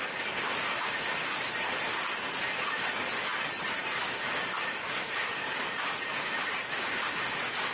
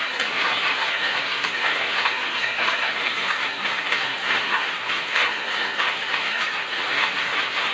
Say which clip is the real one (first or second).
first